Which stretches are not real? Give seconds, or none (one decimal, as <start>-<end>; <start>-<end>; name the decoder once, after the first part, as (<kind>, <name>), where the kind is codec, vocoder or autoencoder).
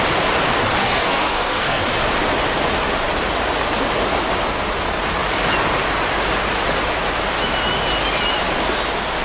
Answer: 0.8-1.8 (codec, SNAC)